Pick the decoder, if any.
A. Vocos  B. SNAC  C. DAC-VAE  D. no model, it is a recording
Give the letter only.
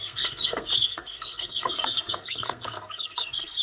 B